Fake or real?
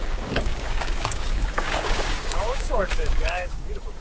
fake